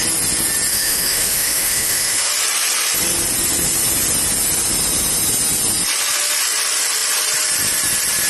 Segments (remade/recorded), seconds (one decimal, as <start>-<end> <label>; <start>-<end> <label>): 0.0-0.7 recorded; 0.7-2.3 remade; 2.3-8.3 recorded